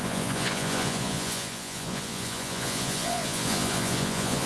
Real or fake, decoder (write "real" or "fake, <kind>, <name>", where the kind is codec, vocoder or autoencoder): fake, vocoder, Vocos